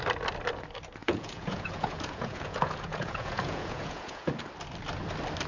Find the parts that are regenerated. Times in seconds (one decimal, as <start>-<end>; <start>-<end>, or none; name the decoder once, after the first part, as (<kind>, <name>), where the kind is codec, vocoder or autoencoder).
1.0-4.3 (vocoder, Vocos)